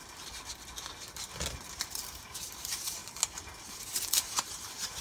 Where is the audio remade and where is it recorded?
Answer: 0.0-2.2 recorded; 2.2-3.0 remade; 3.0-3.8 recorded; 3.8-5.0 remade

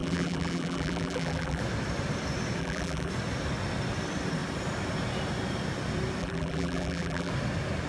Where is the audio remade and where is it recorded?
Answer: 0.0-1.6 remade; 1.6-2.6 recorded; 2.6-3.1 remade; 3.1-6.2 recorded; 6.2-7.3 remade; 7.3-7.9 recorded

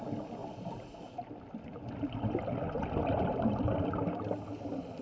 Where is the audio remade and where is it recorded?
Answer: 0.0-5.0 recorded

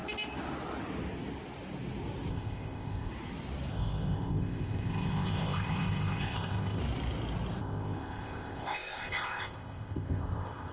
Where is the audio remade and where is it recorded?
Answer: 0.0-2.3 recorded; 2.3-3.1 remade; 3.1-3.7 recorded; 3.7-6.8 remade; 6.8-7.6 recorded; 7.6-10.7 remade

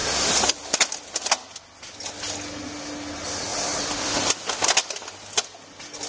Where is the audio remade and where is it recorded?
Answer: 0.0-3.5 recorded; 3.5-4.1 remade; 4.1-6.1 recorded

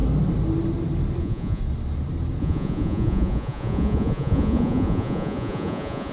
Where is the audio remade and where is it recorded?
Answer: 0.0-1.2 recorded; 1.2-1.6 remade; 1.6-2.4 recorded; 2.4-6.1 remade

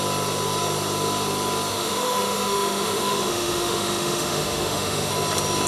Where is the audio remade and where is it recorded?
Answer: 0.0-1.7 recorded; 1.7-5.1 remade; 5.1-5.7 recorded

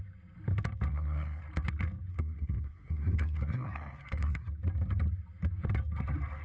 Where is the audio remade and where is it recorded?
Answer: 0.0-0.9 recorded; 0.9-1.4 remade; 1.4-2.1 recorded; 2.1-4.5 remade; 4.5-6.4 recorded